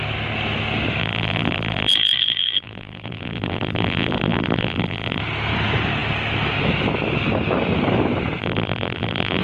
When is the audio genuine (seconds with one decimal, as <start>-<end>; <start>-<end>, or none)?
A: 0.0-1.0; 5.2-8.4